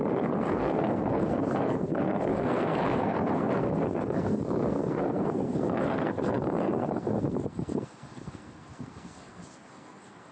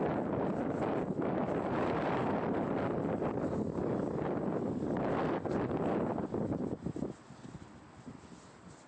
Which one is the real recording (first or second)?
second